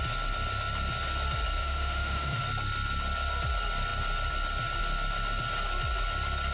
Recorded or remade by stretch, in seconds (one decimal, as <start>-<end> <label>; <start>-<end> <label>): 0.0-1.6 recorded; 1.6-2.4 remade; 2.4-6.5 recorded